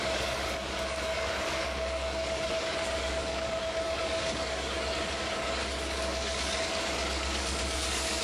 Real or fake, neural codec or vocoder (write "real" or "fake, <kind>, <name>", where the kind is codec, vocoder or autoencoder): fake, codec, DAC